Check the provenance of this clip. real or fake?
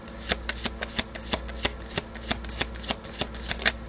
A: real